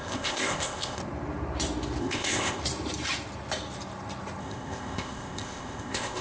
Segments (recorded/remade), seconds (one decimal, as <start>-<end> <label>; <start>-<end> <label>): 0.0-1.0 remade; 1.0-2.0 recorded; 2.0-2.6 remade; 2.6-4.4 recorded; 4.4-6.2 remade